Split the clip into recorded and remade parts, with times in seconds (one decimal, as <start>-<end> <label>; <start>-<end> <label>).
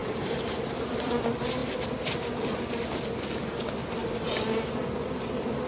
0.0-1.1 remade; 1.1-4.0 recorded; 4.0-5.1 remade; 5.1-5.7 recorded